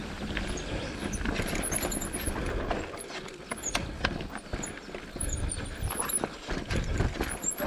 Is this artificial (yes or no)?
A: no